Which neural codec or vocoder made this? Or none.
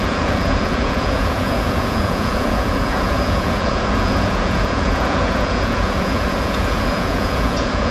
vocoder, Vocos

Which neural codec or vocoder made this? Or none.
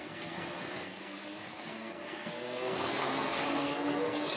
codec, SNAC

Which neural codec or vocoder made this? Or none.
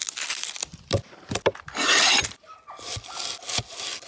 none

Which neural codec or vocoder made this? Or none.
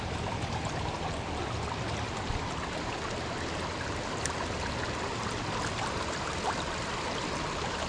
none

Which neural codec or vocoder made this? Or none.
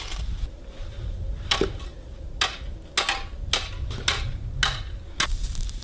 none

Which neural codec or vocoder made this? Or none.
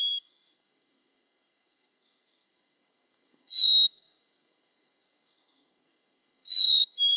codec, SNAC